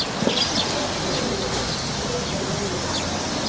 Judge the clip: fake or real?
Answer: real